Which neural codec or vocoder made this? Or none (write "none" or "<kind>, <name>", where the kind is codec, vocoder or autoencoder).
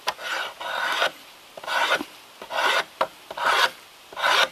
none